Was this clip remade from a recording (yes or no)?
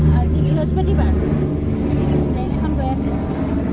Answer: no